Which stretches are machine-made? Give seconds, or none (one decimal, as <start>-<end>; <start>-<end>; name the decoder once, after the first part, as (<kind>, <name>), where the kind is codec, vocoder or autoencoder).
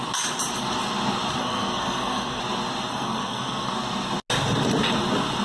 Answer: 1.4-2.4 (codec, SNAC); 2.9-3.7